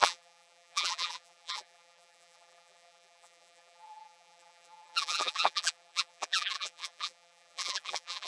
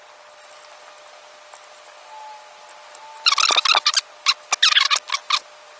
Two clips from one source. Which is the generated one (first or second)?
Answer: first